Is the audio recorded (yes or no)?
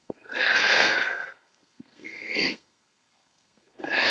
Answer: no